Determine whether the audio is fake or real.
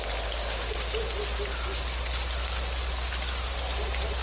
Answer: real